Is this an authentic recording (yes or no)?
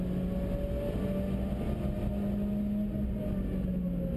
yes